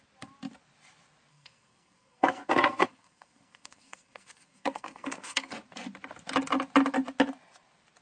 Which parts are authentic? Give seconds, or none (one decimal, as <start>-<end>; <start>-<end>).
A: 0.0-1.3; 5.5-8.0